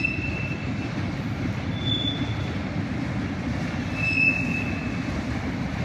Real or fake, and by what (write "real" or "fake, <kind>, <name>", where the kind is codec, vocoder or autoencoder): real